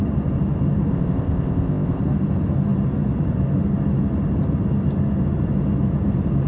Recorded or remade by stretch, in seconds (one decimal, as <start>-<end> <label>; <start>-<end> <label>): 0.0-0.9 recorded; 0.9-2.0 remade; 2.0-6.5 recorded